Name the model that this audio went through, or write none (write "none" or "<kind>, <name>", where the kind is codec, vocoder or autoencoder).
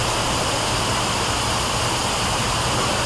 none